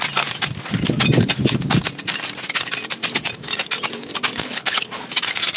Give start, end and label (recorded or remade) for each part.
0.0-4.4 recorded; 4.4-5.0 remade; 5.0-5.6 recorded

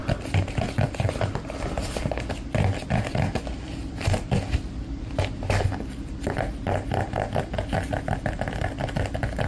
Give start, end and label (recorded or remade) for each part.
0.0-9.5 recorded

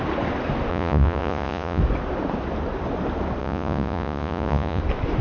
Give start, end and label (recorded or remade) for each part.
0.0-0.7 recorded; 0.7-1.8 remade; 1.8-3.4 recorded; 3.4-4.8 remade; 4.8-5.2 recorded

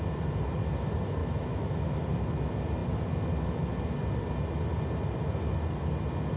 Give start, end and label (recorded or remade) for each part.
0.0-1.2 recorded; 1.2-2.0 remade; 2.0-6.4 recorded

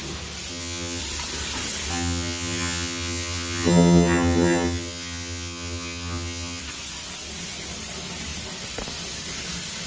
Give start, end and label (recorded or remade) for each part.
0.0-0.5 recorded; 0.5-1.0 remade; 1.0-1.9 recorded; 1.9-6.6 remade; 6.6-9.9 recorded

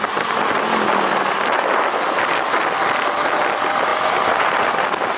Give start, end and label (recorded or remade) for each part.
0.0-5.2 recorded